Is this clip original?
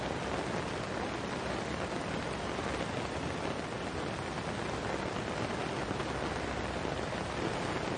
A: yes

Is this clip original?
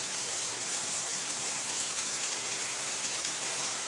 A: no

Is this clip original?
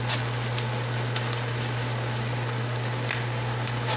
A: yes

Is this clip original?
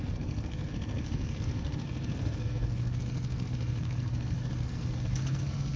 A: no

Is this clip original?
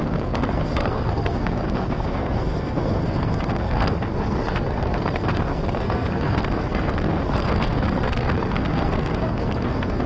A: no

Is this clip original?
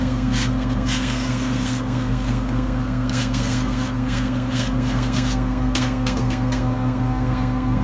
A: no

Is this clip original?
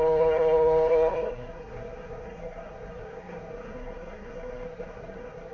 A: no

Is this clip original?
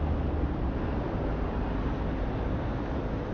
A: yes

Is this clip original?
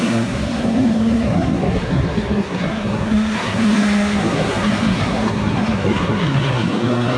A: no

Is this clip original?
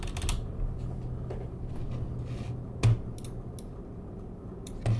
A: yes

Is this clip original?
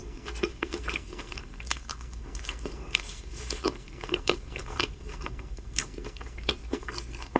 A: no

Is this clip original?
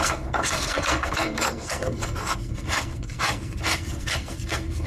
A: no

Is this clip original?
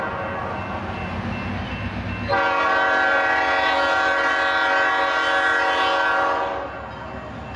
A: yes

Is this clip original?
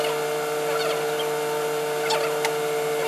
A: yes